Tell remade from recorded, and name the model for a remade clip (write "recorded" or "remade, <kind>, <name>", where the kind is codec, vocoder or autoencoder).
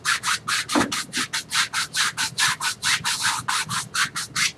recorded